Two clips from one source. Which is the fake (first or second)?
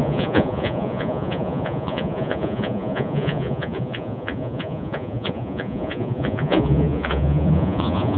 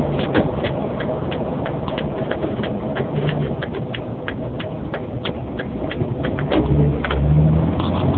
first